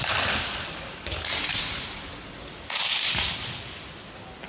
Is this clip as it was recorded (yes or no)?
yes